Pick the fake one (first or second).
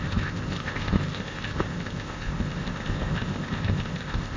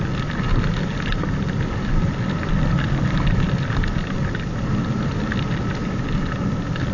first